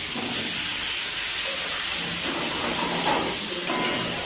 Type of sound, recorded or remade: recorded